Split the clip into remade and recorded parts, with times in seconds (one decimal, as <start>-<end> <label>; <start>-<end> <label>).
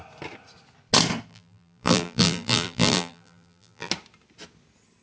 0.0-1.3 recorded; 1.3-3.9 remade; 3.9-5.0 recorded